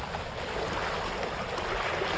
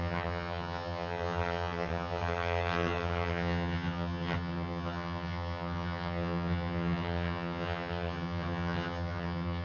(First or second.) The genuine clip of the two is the first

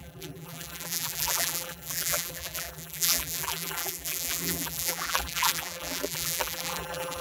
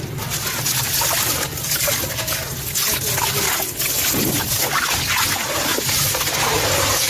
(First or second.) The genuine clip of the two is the second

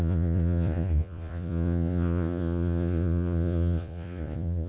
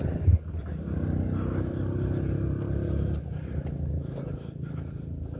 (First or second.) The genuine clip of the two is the second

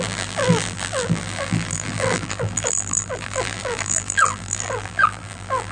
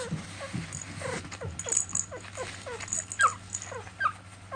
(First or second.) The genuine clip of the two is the second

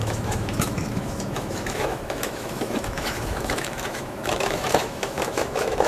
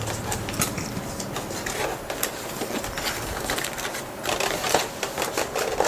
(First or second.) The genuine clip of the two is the second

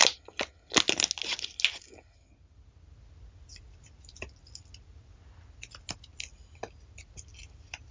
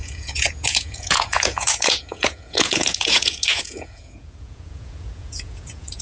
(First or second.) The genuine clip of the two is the first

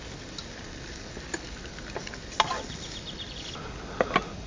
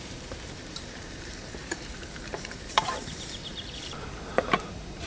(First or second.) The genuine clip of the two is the first